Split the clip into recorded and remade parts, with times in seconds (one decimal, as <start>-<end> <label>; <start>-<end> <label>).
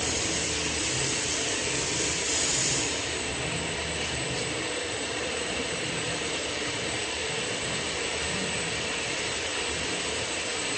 0.0-2.1 recorded; 2.1-3.3 remade; 3.3-4.9 recorded; 4.9-7.2 remade; 7.2-9.0 recorded; 9.0-9.5 remade; 9.5-10.0 recorded; 10.0-10.8 remade